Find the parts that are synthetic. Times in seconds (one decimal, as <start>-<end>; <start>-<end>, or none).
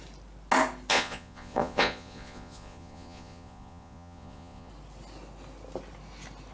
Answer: 0.9-4.7